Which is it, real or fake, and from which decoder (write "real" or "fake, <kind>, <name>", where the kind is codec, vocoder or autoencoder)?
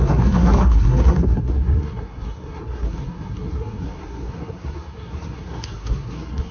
fake, codec, SNAC